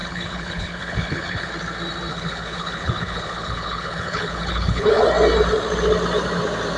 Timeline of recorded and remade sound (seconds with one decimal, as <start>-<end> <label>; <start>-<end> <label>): 0.0-1.5 remade; 1.5-2.1 recorded; 2.1-5.0 remade; 5.0-6.8 recorded